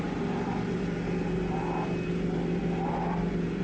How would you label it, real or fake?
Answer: real